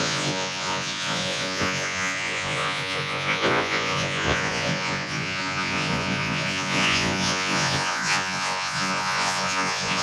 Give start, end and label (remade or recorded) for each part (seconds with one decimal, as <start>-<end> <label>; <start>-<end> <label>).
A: 0.0-10.0 remade